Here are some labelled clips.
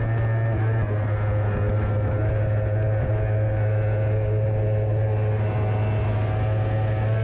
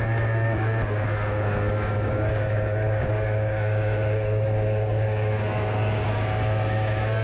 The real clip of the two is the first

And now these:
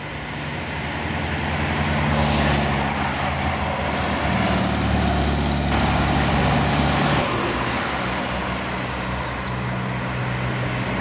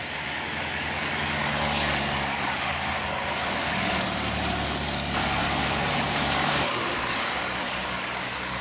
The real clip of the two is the first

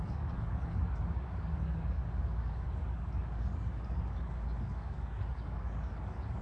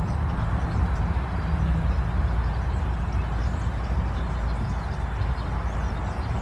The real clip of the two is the second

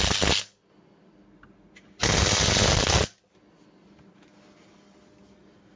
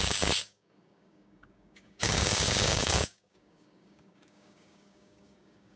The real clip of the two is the first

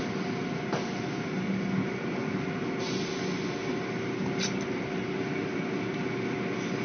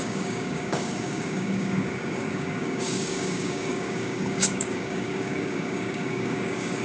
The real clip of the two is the first